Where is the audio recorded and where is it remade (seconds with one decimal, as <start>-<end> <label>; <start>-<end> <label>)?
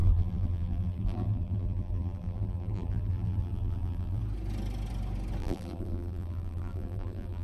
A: 0.0-4.2 remade; 4.2-5.4 recorded; 5.4-7.4 remade